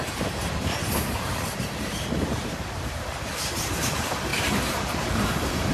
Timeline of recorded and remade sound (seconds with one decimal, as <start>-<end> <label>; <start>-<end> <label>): 0.0-5.7 remade